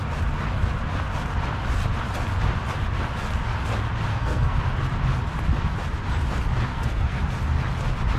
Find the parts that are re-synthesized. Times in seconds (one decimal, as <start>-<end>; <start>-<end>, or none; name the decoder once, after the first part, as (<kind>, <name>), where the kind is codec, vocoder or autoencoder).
4.1-4.6 (codec, SNAC); 6.7-7.2